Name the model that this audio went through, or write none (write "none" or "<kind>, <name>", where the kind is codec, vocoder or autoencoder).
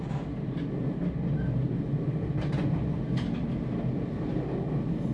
none